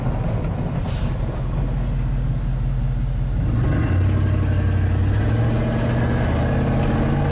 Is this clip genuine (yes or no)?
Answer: yes